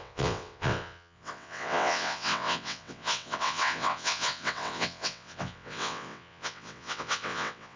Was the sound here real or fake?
fake